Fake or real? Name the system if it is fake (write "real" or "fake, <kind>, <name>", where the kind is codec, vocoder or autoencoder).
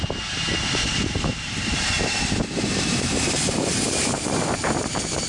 fake, vocoder, BigVGAN v2